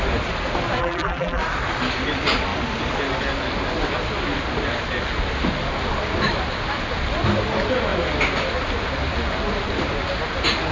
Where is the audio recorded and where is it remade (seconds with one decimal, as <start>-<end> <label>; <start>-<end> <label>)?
0.0-0.8 recorded; 0.8-1.4 remade; 1.4-10.7 recorded

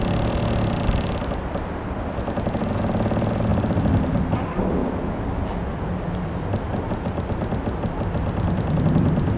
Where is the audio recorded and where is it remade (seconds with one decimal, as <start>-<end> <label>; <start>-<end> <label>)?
0.0-3.5 recorded; 3.5-4.2 remade; 4.2-9.4 recorded